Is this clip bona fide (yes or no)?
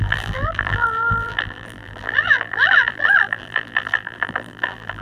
no